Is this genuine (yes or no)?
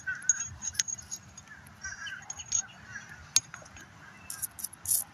yes